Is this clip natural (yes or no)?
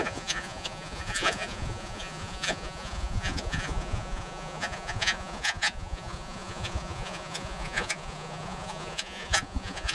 no